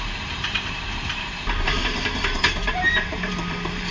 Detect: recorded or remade remade